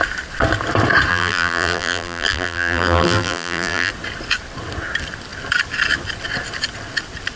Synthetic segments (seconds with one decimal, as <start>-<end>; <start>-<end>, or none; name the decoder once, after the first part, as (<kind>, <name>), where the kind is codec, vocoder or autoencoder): 1.1-3.9 (vocoder, BigVGAN v2)